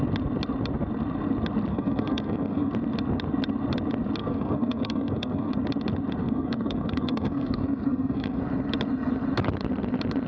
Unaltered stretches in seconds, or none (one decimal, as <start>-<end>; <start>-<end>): 0.0-1.7; 2.7-4.2; 5.5-6.2; 8.4-10.3

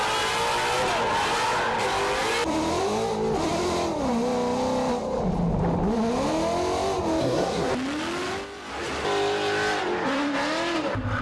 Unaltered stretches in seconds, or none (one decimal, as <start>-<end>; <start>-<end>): 0.0-7.2; 7.7-11.2

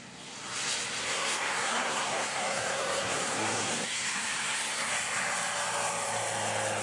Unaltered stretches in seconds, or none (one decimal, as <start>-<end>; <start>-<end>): 0.0-1.0; 4.9-6.8